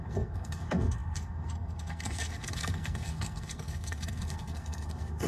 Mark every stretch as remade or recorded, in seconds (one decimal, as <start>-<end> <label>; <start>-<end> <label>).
0.0-5.3 remade